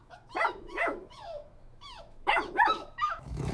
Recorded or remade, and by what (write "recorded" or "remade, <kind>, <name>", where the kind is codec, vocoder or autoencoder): remade, autoencoder, DAC-VAE